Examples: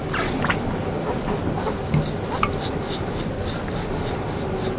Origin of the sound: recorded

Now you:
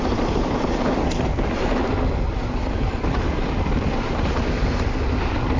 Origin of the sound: recorded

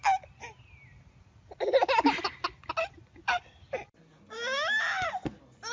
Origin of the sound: recorded